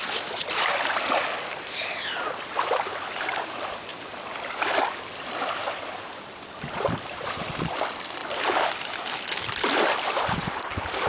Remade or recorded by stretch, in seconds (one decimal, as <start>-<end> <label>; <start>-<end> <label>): 0.0-3.9 remade; 3.9-5.2 recorded; 5.2-8.2 remade; 8.2-9.2 recorded; 9.2-11.1 remade